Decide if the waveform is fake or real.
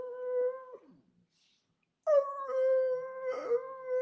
real